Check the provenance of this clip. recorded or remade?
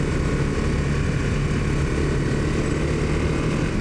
recorded